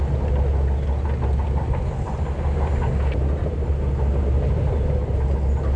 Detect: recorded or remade recorded